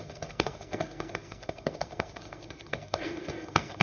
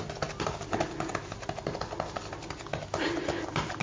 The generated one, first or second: first